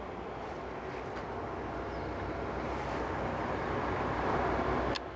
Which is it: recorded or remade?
recorded